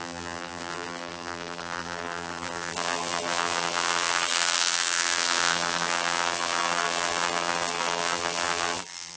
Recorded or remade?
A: remade